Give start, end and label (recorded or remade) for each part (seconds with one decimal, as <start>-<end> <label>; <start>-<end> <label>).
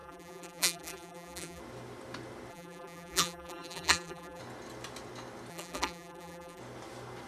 0.0-1.6 remade; 1.6-2.5 recorded; 2.5-4.4 remade; 4.4-5.5 recorded; 5.5-6.6 remade; 6.6-7.3 recorded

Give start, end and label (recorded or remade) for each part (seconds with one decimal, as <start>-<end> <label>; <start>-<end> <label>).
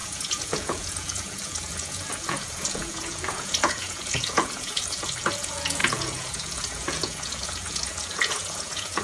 0.0-9.0 remade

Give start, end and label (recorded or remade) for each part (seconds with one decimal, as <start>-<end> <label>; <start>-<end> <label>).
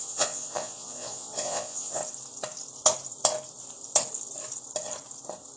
0.0-2.0 remade; 2.0-5.6 recorded